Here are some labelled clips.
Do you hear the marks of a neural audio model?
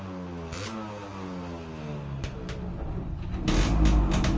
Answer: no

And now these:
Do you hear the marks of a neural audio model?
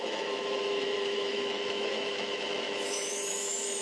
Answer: yes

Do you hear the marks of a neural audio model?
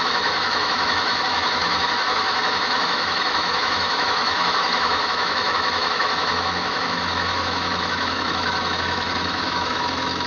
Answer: yes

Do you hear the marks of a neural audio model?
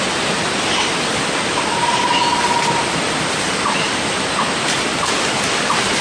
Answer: no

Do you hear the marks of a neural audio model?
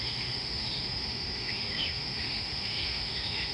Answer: yes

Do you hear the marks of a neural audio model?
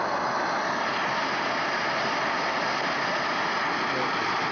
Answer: no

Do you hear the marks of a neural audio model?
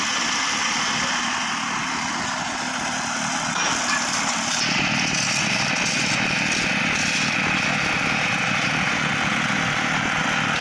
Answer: no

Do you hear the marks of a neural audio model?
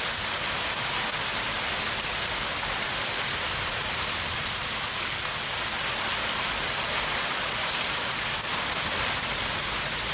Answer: no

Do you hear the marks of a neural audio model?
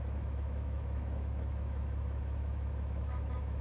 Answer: yes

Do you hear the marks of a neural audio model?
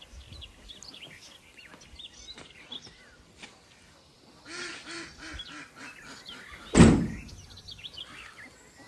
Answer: no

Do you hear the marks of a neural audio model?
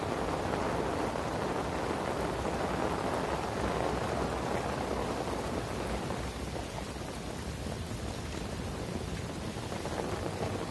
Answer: no